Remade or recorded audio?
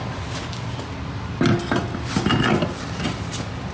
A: recorded